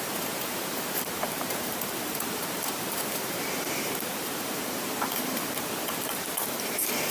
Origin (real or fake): fake